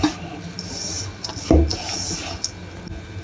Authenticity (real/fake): real